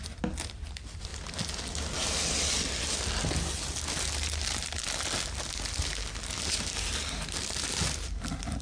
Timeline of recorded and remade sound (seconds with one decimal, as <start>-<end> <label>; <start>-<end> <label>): 0.0-8.6 recorded